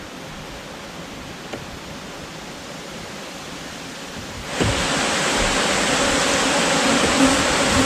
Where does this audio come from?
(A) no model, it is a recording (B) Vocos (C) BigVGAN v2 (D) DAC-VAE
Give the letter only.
A